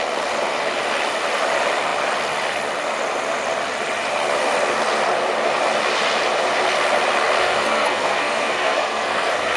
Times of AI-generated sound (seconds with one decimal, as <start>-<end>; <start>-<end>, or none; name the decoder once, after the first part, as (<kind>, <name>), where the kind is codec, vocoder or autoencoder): 7.4-9.6 (codec, SNAC)